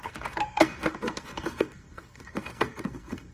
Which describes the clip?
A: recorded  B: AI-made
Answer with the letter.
B